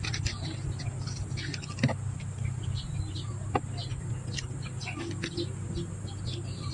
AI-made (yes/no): no